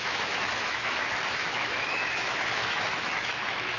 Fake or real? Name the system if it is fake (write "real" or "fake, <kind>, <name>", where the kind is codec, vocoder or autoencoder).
fake, autoencoder, DAC-VAE